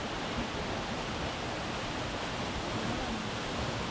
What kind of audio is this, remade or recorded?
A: recorded